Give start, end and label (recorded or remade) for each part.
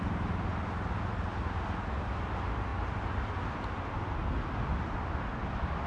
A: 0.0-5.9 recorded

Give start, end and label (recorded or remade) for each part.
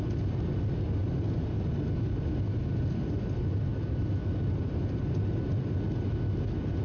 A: 0.0-3.7 recorded; 3.7-5.2 remade; 5.2-6.8 recorded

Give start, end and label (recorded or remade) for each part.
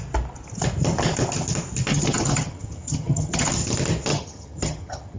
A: 0.0-1.9 recorded; 1.9-3.5 remade; 3.5-4.1 recorded; 4.1-5.2 remade